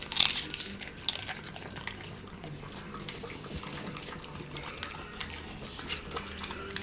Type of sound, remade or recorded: recorded